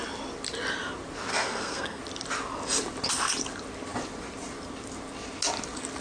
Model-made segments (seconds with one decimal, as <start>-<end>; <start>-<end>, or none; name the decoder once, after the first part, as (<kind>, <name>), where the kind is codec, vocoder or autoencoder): 1.3-2.0 (codec, SNAC)